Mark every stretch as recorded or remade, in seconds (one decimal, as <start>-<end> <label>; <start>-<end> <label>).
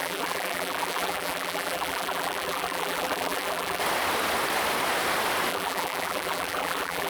0.0-3.8 remade; 3.8-5.5 recorded; 5.5-7.1 remade